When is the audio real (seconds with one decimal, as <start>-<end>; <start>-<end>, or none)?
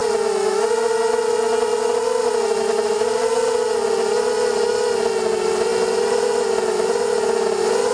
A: 0.0-7.9